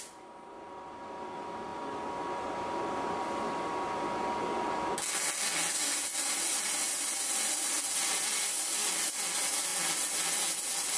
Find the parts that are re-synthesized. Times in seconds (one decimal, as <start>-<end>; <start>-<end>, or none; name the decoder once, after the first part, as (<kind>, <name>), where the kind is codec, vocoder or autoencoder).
none